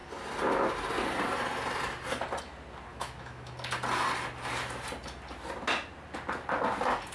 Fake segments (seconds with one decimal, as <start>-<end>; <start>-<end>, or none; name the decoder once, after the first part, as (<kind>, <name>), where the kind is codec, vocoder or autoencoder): 2.9-3.5 (autoencoder, DAC-VAE)